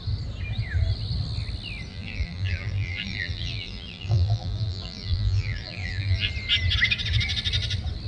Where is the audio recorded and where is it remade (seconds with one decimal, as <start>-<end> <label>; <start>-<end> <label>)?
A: 0.0-1.9 recorded; 1.9-6.3 remade; 6.3-8.1 recorded